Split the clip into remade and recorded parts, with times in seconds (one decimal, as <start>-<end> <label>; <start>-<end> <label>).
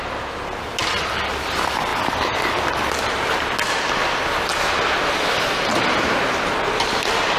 0.0-7.4 recorded